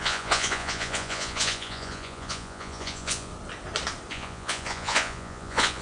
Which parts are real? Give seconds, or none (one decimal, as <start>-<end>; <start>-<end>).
3.3-4.1